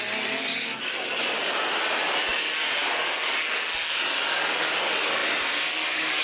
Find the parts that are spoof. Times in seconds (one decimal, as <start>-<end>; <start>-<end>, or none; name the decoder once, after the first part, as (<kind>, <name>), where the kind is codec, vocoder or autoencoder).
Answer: none

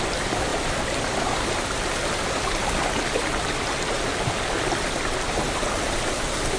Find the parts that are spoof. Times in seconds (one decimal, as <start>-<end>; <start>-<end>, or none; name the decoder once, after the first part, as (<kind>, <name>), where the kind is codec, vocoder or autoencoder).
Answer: none

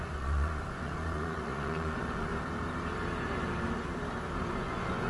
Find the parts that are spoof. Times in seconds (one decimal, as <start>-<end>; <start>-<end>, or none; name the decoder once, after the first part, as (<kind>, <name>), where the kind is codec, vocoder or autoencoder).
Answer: 0.0-2.3 (vocoder, Vocos); 4.5-5.1